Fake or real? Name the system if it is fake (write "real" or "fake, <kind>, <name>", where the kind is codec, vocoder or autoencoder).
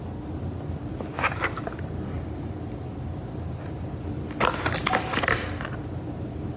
real